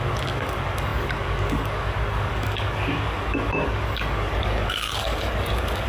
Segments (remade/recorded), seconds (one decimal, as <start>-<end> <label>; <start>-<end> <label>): 0.0-5.9 remade

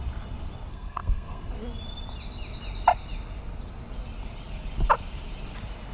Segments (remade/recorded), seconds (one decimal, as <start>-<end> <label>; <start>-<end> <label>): 0.0-0.7 recorded; 0.7-1.5 remade; 1.5-5.9 recorded

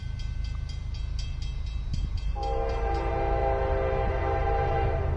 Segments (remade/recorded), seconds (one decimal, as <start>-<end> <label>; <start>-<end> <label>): 0.0-5.2 recorded

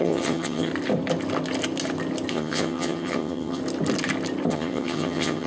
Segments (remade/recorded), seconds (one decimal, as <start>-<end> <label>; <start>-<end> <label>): 0.0-0.7 remade; 0.7-2.3 recorded; 2.3-3.6 remade; 3.6-4.5 recorded; 4.5-5.5 remade

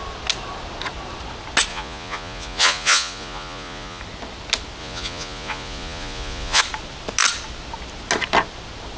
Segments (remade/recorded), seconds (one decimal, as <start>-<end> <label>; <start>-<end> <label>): 0.0-1.7 recorded; 1.7-4.0 remade; 4.0-4.8 recorded; 4.8-6.6 remade; 6.6-9.0 recorded

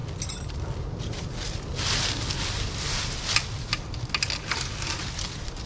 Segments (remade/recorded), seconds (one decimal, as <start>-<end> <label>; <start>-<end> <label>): 0.0-5.7 recorded